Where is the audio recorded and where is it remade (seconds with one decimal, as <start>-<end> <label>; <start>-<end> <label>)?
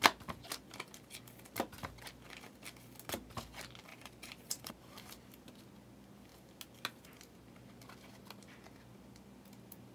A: 0.0-3.9 recorded; 3.9-4.7 remade; 4.7-9.9 recorded